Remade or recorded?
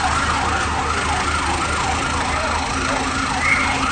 recorded